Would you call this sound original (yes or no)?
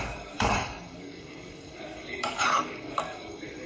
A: no